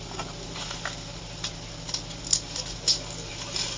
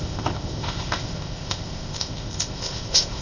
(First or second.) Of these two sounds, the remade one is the second